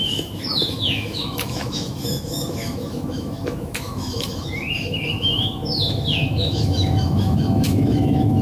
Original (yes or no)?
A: no